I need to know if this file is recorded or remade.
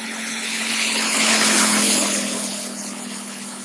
remade